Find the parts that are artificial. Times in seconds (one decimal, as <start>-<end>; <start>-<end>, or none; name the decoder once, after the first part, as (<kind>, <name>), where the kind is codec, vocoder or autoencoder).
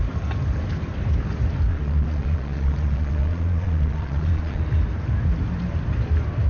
1.7-4.6 (vocoder, Vocos)